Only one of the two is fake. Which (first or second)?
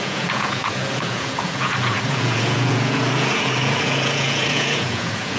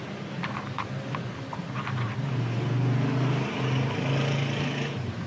first